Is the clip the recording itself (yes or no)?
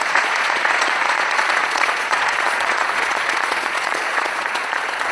no